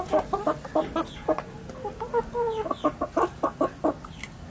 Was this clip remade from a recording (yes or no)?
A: no